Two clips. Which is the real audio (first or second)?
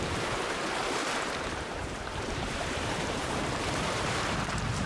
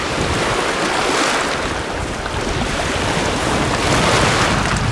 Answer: second